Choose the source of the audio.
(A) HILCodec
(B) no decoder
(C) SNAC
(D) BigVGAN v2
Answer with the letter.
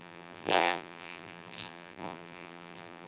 D